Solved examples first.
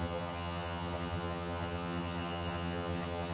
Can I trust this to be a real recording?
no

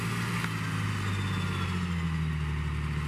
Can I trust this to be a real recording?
yes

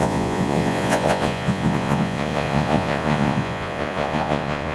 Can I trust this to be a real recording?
no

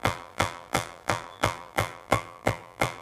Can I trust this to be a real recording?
no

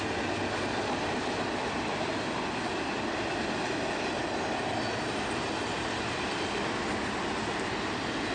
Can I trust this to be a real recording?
yes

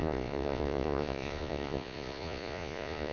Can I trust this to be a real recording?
no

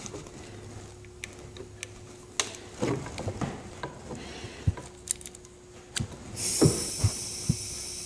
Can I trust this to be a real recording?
yes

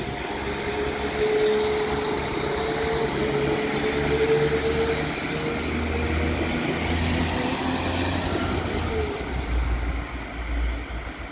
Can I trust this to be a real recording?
yes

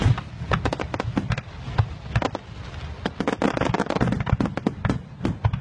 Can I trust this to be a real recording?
yes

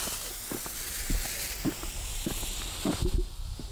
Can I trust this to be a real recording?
yes